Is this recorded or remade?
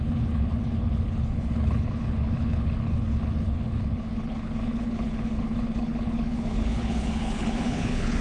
remade